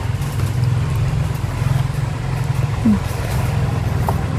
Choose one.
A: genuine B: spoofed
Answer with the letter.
A